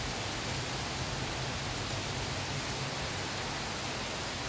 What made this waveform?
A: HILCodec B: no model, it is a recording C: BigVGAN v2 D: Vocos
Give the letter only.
B